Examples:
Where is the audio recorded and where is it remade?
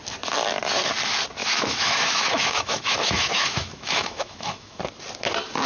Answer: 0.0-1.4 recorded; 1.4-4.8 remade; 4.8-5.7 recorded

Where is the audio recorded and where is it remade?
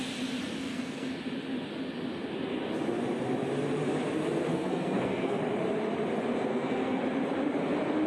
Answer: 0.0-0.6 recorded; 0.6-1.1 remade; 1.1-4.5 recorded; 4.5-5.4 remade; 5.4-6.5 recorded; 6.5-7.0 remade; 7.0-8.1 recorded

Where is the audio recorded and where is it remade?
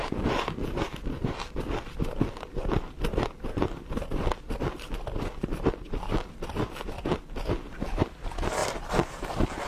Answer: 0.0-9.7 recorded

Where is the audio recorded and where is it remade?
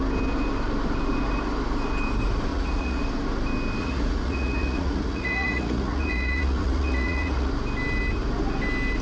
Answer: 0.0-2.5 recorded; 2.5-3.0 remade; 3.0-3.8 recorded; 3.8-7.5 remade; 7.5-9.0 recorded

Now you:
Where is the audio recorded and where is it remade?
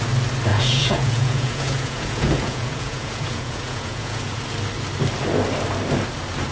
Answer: 0.0-0.5 recorded; 0.5-4.4 remade; 4.4-6.5 recorded